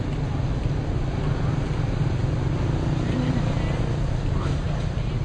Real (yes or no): yes